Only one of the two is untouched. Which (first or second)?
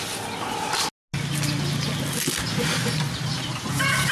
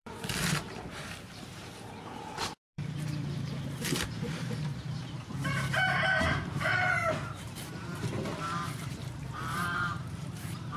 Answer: first